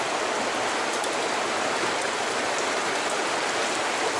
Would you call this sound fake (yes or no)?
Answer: no